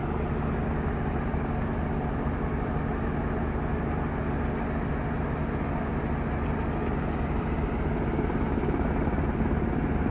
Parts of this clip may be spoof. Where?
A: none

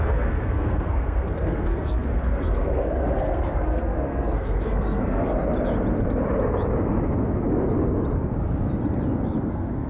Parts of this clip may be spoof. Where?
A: 0.0-5.3; 9.5-9.9

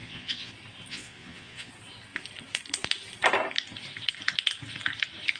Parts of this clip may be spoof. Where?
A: 0.0-0.5; 0.9-1.7

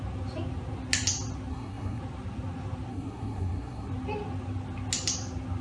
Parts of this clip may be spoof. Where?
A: 1.5-2.0; 2.9-3.9

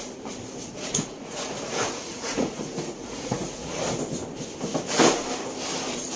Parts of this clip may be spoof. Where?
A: 0.7-3.8

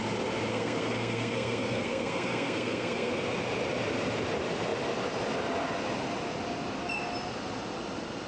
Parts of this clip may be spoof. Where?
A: 0.5-3.1